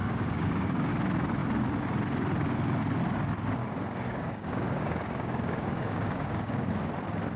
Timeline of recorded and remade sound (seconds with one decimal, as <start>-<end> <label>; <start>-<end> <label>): 0.0-0.9 remade; 0.9-3.6 recorded; 3.6-6.7 remade; 6.7-7.4 recorded

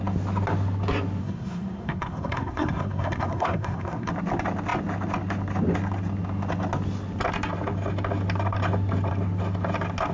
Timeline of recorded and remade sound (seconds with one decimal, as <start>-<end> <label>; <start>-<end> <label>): 0.0-1.2 recorded; 1.2-4.1 remade; 4.1-10.1 recorded

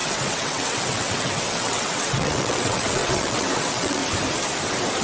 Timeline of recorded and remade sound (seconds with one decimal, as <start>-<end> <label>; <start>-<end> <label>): 0.0-4.0 remade; 4.0-5.0 recorded

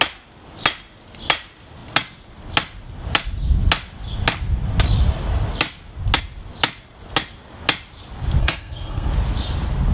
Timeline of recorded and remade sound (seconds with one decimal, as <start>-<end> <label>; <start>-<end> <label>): 0.0-8.4 recorded; 8.4-9.1 remade; 9.1-9.9 recorded

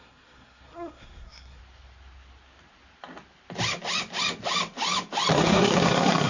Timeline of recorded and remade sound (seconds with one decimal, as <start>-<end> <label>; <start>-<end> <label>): 0.0-1.6 remade; 1.6-5.3 recorded; 5.3-6.3 remade

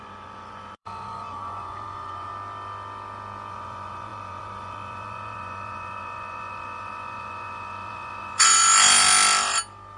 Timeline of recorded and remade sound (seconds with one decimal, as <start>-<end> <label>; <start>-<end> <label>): 0.0-2.3 remade; 2.3-3.5 recorded; 3.5-8.6 remade; 8.6-10.0 recorded

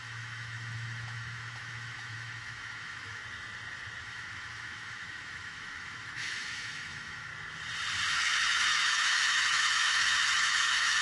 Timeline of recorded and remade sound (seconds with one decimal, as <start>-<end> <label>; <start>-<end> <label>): 0.0-3.2 remade; 3.2-4.0 recorded; 4.0-7.3 remade; 7.3-8.1 recorded; 8.1-11.0 remade